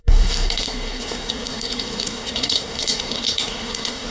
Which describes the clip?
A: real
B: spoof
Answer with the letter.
B